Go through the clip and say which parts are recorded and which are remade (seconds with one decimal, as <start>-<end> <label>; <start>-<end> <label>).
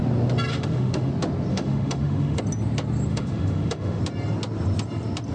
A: 0.0-0.5 recorded; 0.5-1.1 remade; 1.1-1.5 recorded; 1.5-2.4 remade; 2.4-3.1 recorded; 3.1-4.0 remade; 4.0-5.3 recorded